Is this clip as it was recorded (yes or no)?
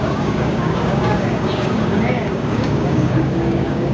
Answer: no